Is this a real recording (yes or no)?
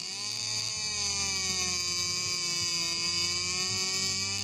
yes